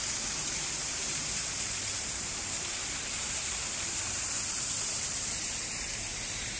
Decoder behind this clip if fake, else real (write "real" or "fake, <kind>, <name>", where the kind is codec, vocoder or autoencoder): fake, vocoder, BigVGAN v2